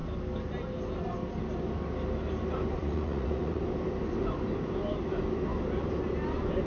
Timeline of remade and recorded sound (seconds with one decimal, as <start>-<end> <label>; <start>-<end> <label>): 0.0-2.8 recorded; 2.8-3.6 remade; 3.6-6.7 recorded